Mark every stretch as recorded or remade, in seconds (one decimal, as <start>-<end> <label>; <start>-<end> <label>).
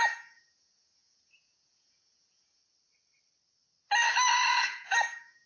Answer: 0.0-2.6 remade; 2.6-4.5 recorded; 4.5-5.5 remade